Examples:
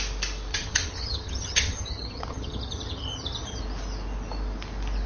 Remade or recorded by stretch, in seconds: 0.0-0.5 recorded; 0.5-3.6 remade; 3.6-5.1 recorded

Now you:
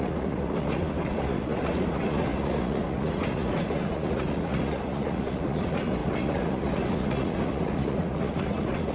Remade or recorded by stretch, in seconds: 0.0-8.9 remade

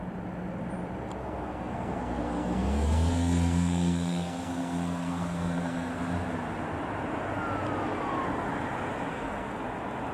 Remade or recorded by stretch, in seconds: 0.0-1.2 recorded; 1.2-6.0 remade; 6.0-9.1 recorded; 9.1-9.6 remade; 9.6-10.1 recorded

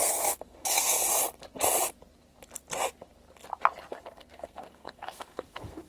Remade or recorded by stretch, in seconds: 0.0-1.1 remade; 1.1-3.9 recorded; 3.9-5.9 remade

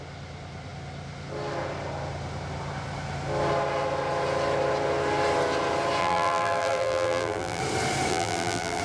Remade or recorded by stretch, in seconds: 0.0-6.0 recorded; 6.0-7.6 remade; 7.6-8.1 recorded; 8.1-8.8 remade

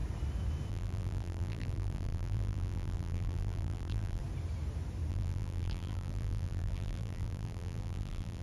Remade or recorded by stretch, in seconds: 0.0-0.7 recorded; 0.7-4.2 remade; 4.2-5.1 recorded; 5.1-8.4 remade

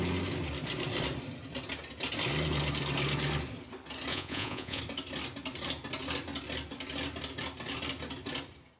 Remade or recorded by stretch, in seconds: 0.0-4.1 recorded; 4.1-4.8 remade; 4.8-8.8 recorded